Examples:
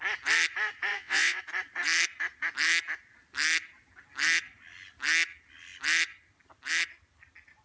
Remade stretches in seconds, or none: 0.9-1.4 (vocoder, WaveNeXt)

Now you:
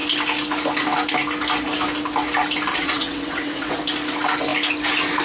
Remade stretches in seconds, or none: 2.7-3.8 (vocoder, WaveNeXt)